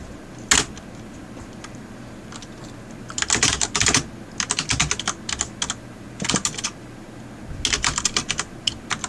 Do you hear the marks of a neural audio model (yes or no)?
no